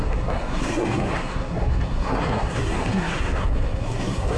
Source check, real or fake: fake